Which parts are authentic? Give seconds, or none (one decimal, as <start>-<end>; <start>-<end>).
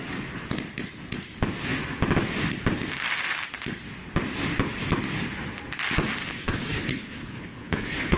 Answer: 0.0-6.2